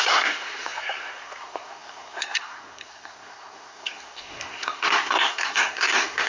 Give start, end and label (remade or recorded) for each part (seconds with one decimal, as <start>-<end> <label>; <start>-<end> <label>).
0.0-6.3 remade